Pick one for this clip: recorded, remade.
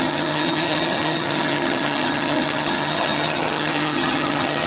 remade